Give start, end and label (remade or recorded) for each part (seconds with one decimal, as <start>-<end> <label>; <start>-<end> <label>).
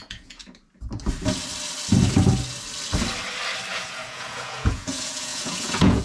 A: 0.0-0.4 remade; 0.4-3.7 recorded; 3.7-6.0 remade